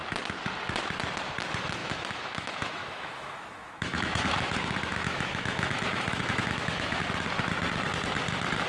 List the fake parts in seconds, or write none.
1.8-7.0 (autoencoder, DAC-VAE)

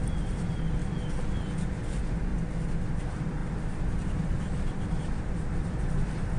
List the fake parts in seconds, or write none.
0.0-0.8 (vocoder, BigVGAN v2); 1.7-2.3; 3.0-6.4